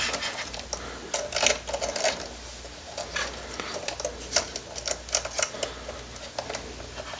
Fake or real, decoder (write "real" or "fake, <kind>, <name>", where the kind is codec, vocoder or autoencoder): real